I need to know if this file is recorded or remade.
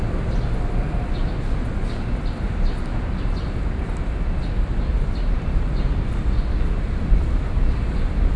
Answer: recorded